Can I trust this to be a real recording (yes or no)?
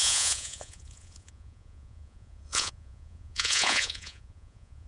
no